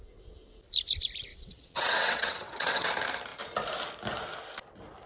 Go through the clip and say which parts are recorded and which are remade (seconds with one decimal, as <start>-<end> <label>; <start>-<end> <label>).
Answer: 0.0-1.3 recorded; 1.3-2.9 remade; 2.9-5.1 recorded